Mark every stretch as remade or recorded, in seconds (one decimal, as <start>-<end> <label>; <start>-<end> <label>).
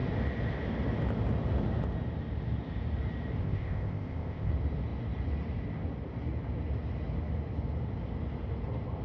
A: 0.0-3.4 recorded; 3.4-4.5 remade; 4.5-9.0 recorded